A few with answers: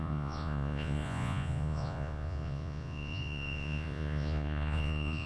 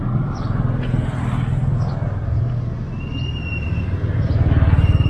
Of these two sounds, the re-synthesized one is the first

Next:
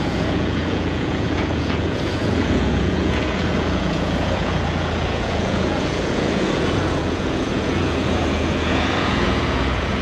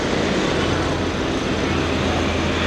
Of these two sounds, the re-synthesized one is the first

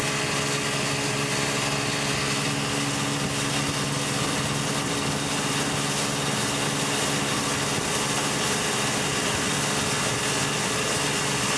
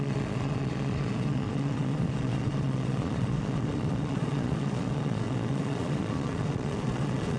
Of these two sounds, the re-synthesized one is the second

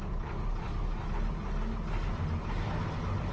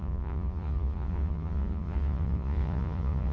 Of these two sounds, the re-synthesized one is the second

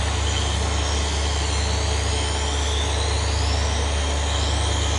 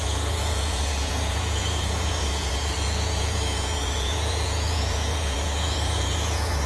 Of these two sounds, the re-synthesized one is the second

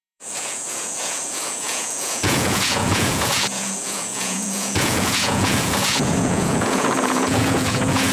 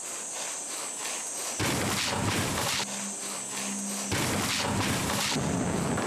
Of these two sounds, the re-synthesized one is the first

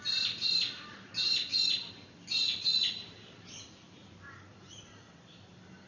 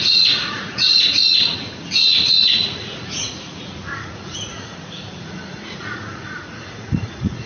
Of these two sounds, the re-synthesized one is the second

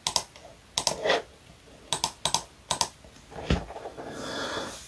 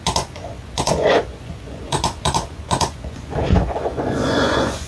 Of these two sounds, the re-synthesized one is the second